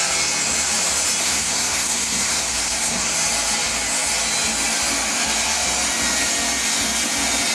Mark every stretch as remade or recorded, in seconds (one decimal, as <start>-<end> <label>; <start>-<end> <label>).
0.0-1.2 recorded; 1.2-3.1 remade; 3.1-7.5 recorded